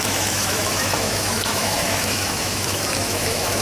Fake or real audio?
fake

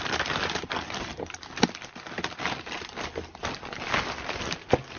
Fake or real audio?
real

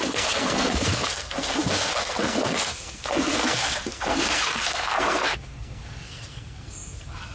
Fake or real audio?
fake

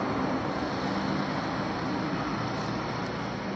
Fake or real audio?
real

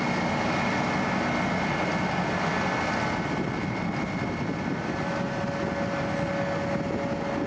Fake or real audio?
real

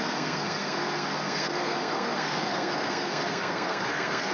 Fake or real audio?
fake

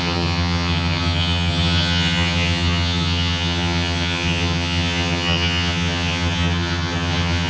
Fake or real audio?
fake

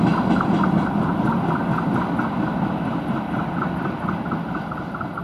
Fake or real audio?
real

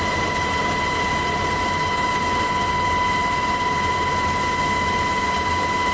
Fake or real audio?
real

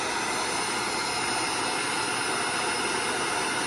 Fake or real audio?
real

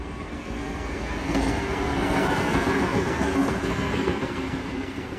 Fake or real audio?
fake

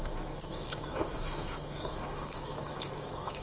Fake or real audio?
fake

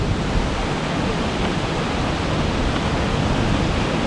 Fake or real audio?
real